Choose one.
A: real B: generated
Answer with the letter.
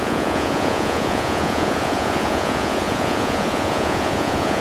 B